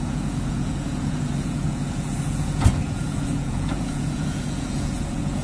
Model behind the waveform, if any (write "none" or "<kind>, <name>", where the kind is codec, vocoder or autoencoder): vocoder, Vocos